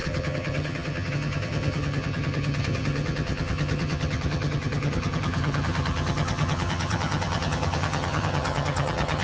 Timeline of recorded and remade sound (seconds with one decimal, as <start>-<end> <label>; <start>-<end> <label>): 0.0-9.2 remade